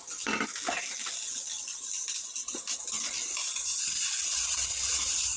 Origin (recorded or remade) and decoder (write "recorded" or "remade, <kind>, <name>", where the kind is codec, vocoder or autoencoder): recorded